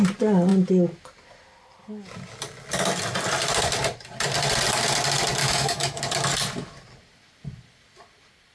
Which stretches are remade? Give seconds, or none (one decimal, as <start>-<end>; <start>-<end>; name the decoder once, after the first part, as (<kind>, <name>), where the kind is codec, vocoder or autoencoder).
5.4-6.0 (autoencoder, DAC-VAE)